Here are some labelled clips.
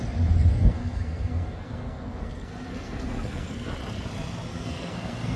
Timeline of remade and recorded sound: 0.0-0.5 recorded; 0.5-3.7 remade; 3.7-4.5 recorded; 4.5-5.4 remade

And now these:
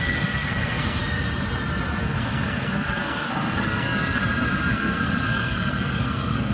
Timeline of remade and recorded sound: 0.0-1.0 remade; 1.0-2.0 recorded; 2.0-4.2 remade; 4.2-4.7 recorded; 4.7-6.5 remade

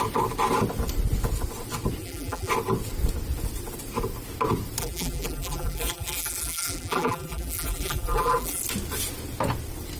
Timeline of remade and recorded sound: 0.0-2.0 recorded; 2.0-2.5 remade; 2.5-4.8 recorded; 4.8-8.6 remade; 8.6-10.0 recorded